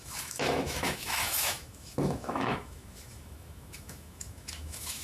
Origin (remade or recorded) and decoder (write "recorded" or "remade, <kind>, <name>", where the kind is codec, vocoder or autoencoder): remade, autoencoder, DAC-VAE